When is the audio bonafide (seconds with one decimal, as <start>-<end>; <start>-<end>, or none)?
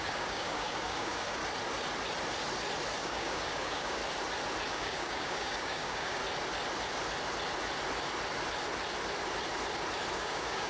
1.4-3.0; 4.0-4.7; 6.2-10.1